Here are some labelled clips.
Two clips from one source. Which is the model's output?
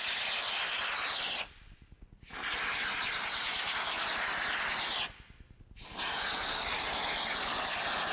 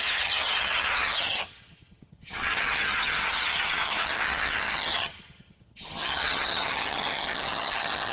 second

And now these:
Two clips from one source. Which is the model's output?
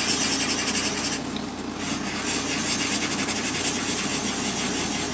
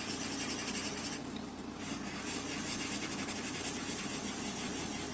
second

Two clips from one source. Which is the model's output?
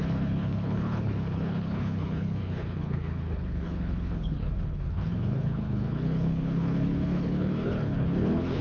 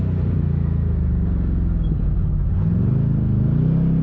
first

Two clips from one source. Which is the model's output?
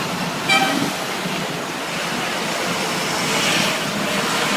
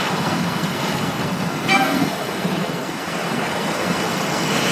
second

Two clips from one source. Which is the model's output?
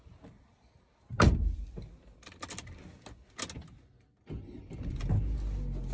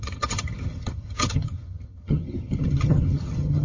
second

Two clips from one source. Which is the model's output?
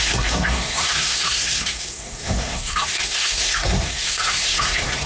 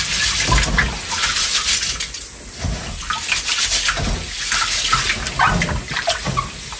first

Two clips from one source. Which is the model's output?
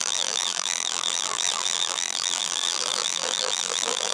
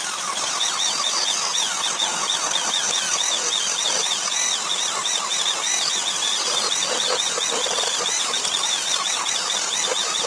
first